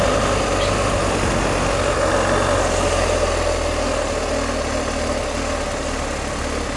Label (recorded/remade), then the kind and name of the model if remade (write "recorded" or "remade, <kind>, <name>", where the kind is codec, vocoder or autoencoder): recorded